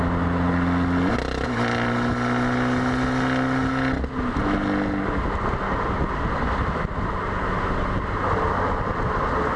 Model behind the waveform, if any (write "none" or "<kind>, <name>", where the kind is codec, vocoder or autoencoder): none